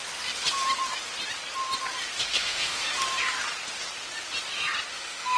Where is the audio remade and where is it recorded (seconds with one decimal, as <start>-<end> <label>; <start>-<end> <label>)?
0.0-2.2 recorded; 2.2-2.8 remade; 2.8-4.9 recorded; 4.9-5.4 remade